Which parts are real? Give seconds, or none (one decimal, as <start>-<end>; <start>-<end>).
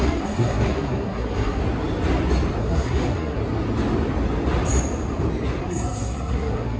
1.6-2.6; 3.4-5.6